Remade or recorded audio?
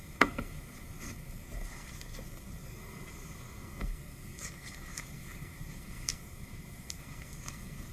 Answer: remade